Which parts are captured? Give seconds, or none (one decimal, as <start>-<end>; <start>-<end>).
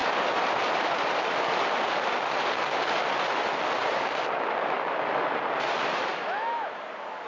0.0-6.1; 6.7-7.3